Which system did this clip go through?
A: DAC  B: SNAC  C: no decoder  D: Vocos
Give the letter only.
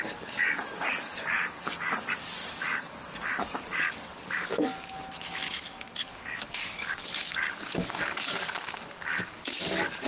A